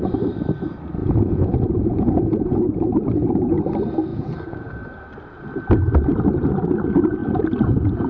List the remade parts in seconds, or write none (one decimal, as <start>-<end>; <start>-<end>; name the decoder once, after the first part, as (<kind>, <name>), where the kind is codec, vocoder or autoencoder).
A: 1.0-2.9 (vocoder, Vocos); 4.1-4.7